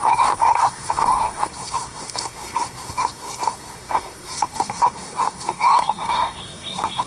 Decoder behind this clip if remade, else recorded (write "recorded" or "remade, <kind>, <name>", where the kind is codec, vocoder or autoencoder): remade, codec, SNAC